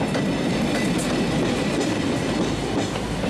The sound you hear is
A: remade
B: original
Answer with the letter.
B